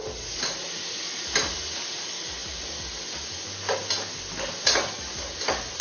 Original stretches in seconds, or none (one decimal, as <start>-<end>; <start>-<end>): 0.0-2.4; 3.4-5.8